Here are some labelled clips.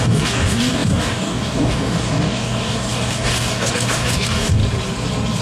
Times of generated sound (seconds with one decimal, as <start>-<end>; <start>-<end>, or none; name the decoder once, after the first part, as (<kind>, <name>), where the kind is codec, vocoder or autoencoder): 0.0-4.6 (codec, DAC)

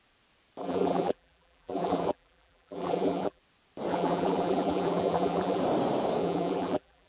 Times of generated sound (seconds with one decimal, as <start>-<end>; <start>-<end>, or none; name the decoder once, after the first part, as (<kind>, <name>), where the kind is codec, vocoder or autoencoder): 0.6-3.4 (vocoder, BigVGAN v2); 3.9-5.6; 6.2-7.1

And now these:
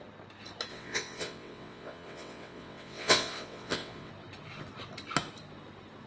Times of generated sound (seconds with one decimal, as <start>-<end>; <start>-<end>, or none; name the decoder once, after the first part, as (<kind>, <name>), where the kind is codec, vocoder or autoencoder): 0.7-4.1 (vocoder, WaveNeXt)

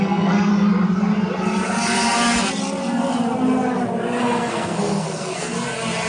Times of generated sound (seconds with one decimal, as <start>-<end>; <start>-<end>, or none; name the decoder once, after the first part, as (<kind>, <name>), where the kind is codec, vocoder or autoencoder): 0.0-0.5 (codec, SNAC); 4.2-5.5